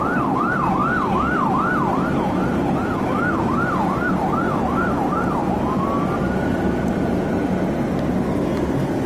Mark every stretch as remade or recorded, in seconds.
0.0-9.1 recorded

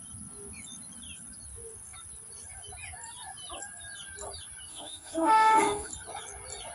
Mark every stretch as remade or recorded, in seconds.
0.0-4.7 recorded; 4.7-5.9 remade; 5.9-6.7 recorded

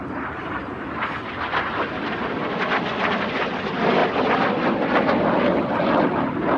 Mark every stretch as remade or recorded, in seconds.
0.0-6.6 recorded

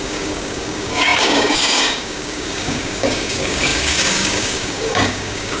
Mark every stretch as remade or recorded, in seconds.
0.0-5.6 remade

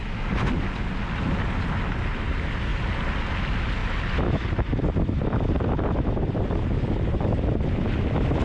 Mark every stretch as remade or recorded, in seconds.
0.0-2.7 recorded; 2.7-3.3 remade; 3.3-3.8 recorded; 3.8-8.4 remade